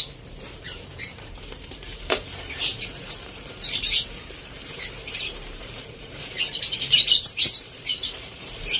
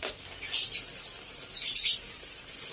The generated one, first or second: first